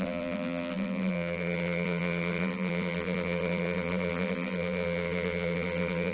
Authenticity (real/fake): fake